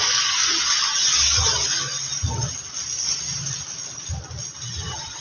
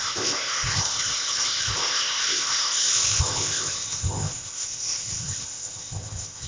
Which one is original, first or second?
first